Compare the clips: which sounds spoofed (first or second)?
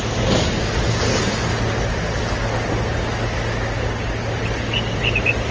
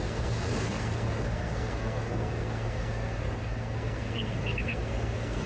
second